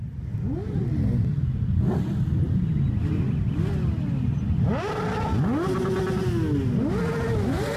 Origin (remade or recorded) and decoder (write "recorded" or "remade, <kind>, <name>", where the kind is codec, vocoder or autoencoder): recorded